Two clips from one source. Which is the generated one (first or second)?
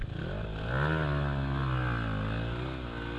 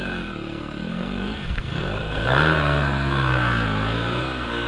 second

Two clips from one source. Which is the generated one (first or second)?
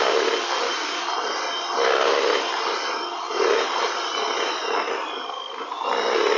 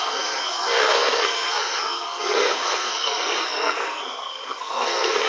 second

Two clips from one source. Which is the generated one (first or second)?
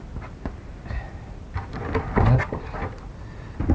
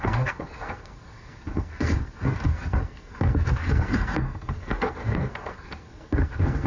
second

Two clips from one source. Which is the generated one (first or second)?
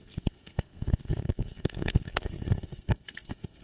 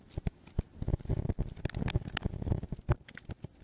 first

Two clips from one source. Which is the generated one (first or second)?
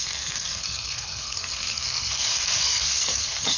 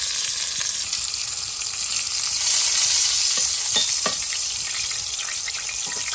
first